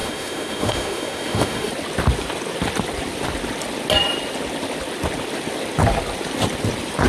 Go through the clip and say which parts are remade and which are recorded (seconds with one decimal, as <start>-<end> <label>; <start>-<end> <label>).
0.0-1.7 remade; 1.7-7.1 recorded